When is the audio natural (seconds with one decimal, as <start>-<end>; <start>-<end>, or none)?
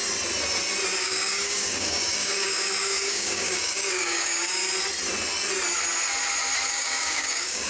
0.0-1.0; 4.6-6.7